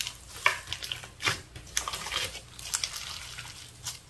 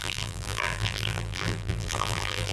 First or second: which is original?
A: first